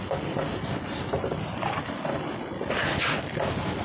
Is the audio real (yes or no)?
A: yes